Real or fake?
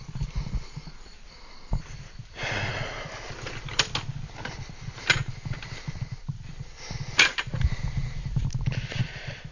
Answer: real